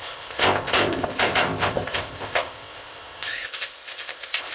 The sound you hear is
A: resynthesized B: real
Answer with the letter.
A